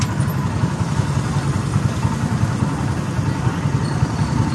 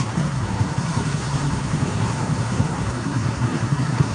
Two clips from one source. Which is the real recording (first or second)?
first